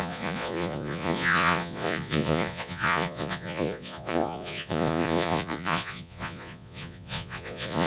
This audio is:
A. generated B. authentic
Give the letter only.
A